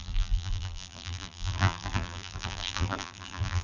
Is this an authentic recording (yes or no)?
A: no